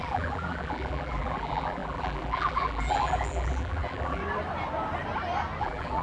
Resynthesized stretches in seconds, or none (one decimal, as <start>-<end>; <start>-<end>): 0.0-4.2; 5.6-6.0